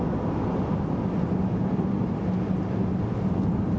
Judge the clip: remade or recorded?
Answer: recorded